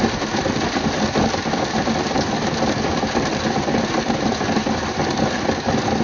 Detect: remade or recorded remade